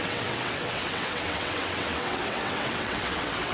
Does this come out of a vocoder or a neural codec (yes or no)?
yes